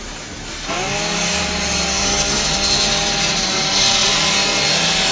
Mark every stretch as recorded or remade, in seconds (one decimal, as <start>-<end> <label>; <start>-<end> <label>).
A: 0.0-5.1 recorded